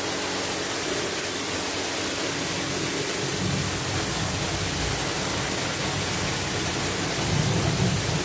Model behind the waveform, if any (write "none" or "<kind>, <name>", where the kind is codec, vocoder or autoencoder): none